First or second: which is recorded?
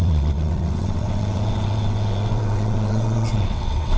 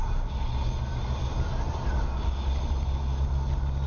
second